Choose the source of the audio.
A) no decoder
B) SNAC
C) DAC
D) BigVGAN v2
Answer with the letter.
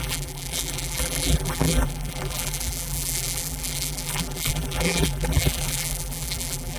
D